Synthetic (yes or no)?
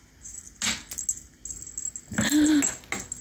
no